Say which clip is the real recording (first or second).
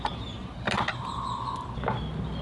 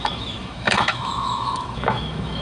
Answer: first